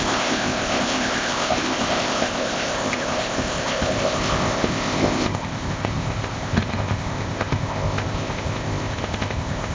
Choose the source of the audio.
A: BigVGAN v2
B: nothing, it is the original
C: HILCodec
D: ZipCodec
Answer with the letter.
D